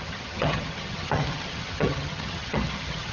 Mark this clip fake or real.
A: fake